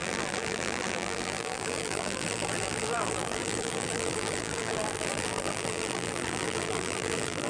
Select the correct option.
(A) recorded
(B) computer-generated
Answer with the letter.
B